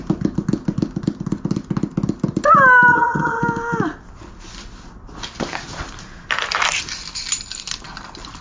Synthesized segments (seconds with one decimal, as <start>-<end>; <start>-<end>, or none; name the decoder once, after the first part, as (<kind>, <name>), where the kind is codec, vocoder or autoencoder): 2.9-3.4 (vocoder, HiFi-GAN)